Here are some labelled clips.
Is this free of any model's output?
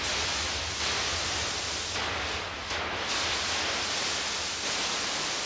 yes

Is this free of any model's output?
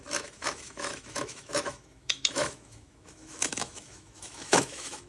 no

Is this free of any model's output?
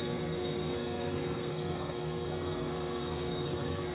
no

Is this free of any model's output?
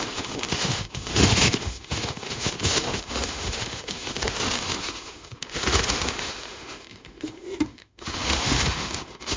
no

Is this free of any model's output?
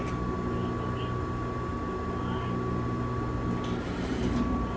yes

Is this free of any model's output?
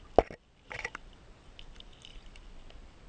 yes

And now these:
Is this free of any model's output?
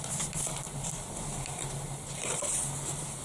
no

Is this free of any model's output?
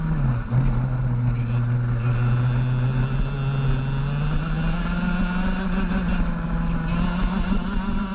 yes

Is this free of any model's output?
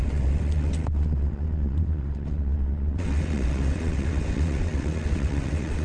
no